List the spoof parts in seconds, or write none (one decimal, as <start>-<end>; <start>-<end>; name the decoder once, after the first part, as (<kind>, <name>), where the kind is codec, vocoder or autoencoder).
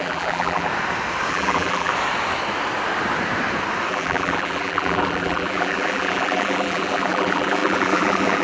0.0-0.7 (vocoder, BigVGAN v2); 1.3-1.9; 3.9-8.4